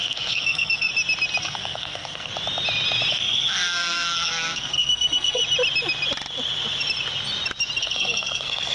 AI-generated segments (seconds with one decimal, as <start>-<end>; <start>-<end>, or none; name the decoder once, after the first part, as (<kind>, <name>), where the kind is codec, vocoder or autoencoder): 0.0-0.9 (codec, SNAC); 1.4-2.3; 3.1-5.4; 7.8-8.7